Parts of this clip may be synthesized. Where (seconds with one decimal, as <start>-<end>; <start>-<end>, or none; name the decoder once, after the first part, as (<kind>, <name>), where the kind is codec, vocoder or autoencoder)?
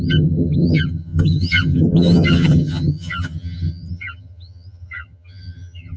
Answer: 0.0-6.0 (vocoder, HiFi-GAN)